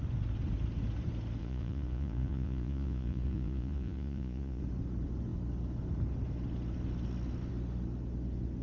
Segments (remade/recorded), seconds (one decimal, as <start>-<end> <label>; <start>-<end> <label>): 0.0-1.4 recorded; 1.4-4.6 remade; 4.6-8.6 recorded